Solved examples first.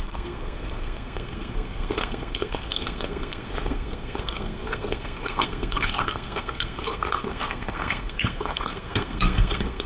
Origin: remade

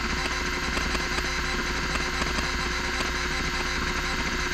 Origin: recorded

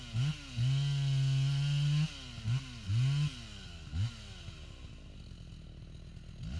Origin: recorded